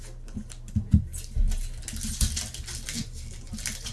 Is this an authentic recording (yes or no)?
yes